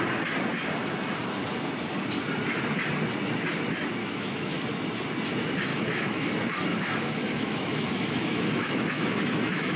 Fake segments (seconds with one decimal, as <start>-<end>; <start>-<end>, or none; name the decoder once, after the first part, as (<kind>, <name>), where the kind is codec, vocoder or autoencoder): 4.0-4.6 (autoencoder, DAC-VAE); 5.7-6.3; 6.7-9.8